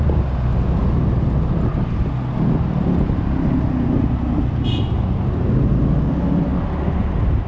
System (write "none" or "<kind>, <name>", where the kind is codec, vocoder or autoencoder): none